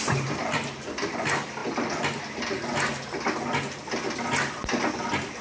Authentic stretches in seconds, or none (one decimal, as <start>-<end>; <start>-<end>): 0.0-5.4